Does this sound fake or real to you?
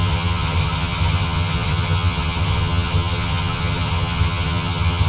fake